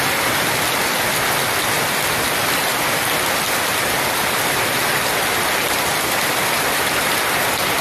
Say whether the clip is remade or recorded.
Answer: recorded